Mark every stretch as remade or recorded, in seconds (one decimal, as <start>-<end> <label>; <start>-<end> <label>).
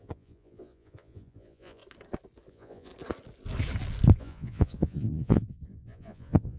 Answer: 0.0-1.8 remade; 1.8-2.5 recorded; 2.5-2.9 remade; 2.9-4.2 recorded; 4.2-6.6 remade